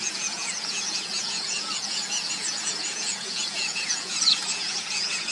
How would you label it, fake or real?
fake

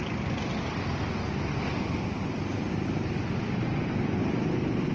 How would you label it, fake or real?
real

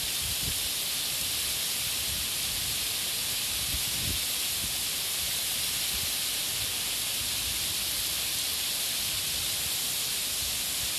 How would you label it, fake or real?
real